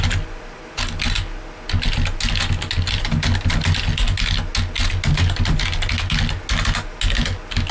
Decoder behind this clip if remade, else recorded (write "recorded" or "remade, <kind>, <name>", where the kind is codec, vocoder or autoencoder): recorded